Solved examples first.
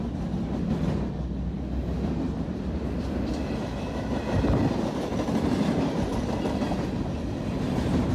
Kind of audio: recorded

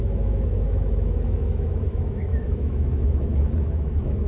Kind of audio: remade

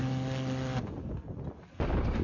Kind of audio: recorded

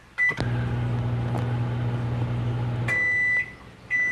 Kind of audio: recorded